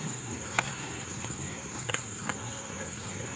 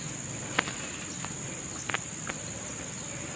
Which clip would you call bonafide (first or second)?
second